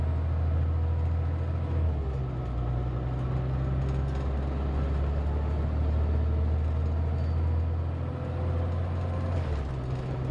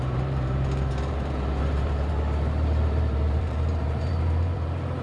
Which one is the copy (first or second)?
second